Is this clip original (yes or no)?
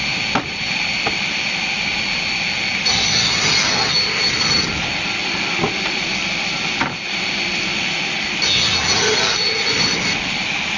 yes